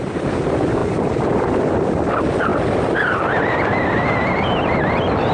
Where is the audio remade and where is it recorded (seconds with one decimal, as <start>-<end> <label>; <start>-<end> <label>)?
0.0-0.8 recorded; 0.8-1.6 remade; 1.6-2.5 recorded; 2.5-3.1 remade; 3.1-5.3 recorded